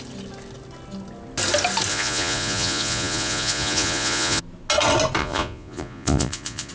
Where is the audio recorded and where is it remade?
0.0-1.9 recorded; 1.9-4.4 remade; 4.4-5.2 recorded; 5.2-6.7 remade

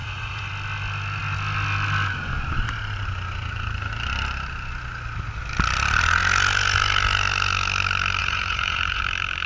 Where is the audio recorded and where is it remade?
0.0-0.5 remade; 0.5-8.2 recorded; 8.2-9.0 remade; 9.0-9.5 recorded

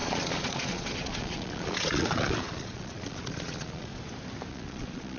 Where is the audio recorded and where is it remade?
0.0-3.9 remade; 3.9-4.5 recorded; 4.5-5.2 remade

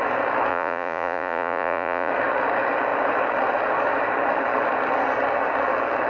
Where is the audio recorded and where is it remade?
0.0-0.5 recorded; 0.5-2.1 remade; 2.1-6.1 recorded

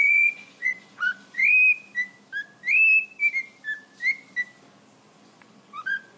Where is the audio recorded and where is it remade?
0.0-1.4 remade; 1.4-5.1 recorded; 5.1-6.2 remade